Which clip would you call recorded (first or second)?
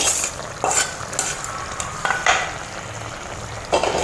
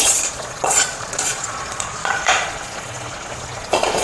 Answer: first